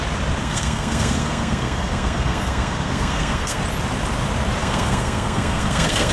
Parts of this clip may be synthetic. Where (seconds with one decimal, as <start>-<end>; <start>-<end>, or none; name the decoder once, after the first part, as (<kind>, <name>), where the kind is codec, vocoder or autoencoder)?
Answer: 0.4-3.6 (codec, SNAC); 4.6-6.1